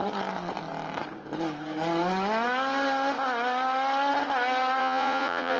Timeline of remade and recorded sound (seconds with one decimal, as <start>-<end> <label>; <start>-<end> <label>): 0.0-4.8 recorded; 4.8-5.6 remade